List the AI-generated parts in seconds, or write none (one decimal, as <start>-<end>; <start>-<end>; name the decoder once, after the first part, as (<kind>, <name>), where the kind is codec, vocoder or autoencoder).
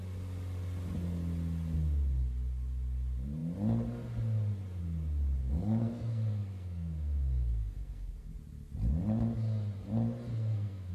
5.4-8.3 (codec, SNAC); 10.3-10.9